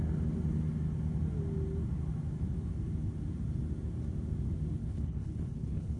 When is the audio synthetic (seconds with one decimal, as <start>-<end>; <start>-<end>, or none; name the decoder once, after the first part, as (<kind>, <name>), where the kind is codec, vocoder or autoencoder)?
4.8-6.0 (codec, HILCodec)